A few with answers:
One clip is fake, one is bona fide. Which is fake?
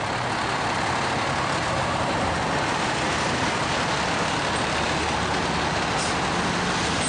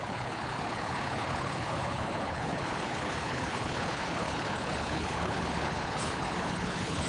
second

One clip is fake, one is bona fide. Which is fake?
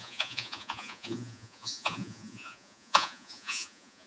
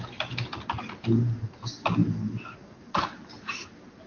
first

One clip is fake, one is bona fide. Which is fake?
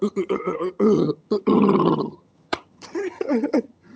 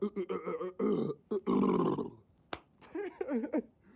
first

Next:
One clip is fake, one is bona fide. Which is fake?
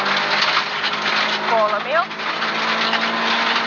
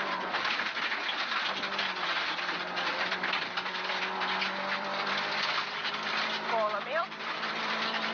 second